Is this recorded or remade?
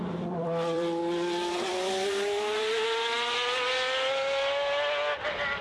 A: remade